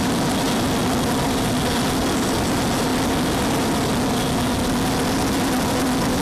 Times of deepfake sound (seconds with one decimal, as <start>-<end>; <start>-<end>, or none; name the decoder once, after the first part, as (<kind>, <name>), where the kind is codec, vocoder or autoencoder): none